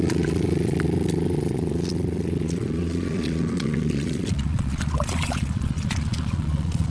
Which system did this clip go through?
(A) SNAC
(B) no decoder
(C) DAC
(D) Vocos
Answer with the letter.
D